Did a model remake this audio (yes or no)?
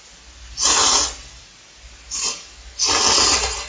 no